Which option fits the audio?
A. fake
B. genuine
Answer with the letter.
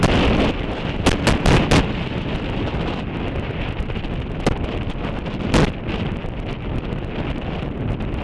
B